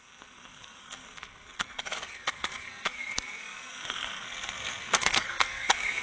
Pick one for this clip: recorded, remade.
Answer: remade